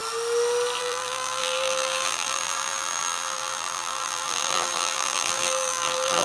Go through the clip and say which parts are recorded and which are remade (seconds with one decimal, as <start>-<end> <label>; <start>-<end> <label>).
0.0-0.8 recorded; 0.8-6.2 remade